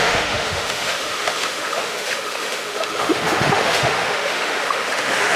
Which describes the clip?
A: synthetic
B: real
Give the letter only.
A